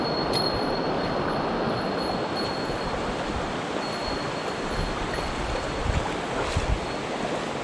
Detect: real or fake real